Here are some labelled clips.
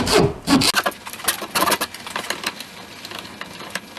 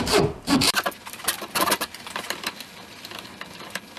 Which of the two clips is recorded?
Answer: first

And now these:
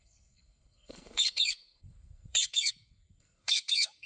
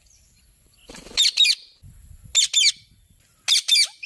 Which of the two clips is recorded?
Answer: second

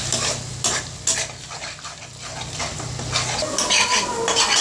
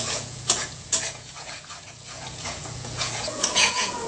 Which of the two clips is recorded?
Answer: first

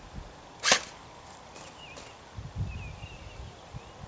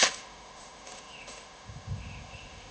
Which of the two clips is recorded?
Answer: first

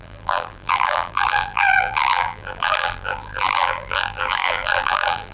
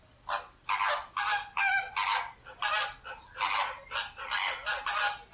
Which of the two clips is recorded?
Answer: second